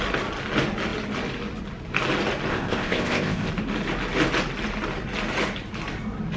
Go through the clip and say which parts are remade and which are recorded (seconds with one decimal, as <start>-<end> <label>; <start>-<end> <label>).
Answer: 0.0-2.5 recorded; 2.5-3.5 remade; 3.5-6.4 recorded